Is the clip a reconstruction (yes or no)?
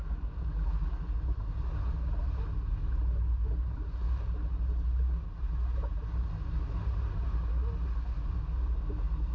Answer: no